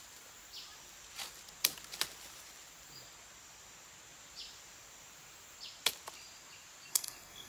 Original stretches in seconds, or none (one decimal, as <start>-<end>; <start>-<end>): 0.0-6.9